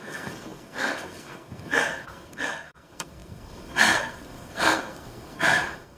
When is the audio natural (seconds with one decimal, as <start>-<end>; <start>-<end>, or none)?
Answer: none